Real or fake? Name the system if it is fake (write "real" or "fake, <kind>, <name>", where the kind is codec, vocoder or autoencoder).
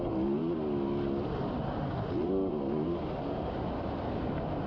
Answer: real